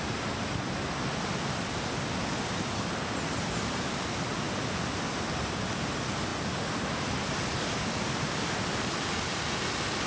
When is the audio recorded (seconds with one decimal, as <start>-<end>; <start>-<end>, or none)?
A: 0.0-10.1